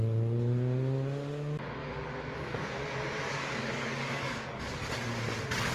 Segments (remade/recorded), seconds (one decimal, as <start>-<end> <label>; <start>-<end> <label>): 0.0-1.8 recorded; 1.8-2.4 remade; 2.4-3.3 recorded; 3.3-5.1 remade; 5.1-5.7 recorded